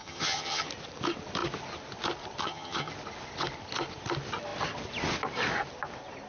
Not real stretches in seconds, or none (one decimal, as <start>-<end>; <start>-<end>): 0.0-0.7; 2.4-2.9